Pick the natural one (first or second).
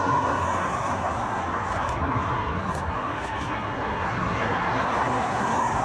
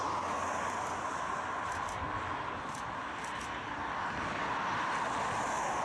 second